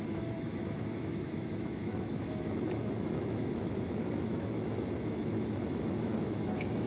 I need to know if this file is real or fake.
fake